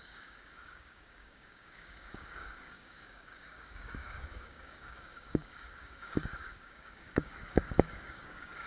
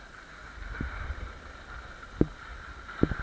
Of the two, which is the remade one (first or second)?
first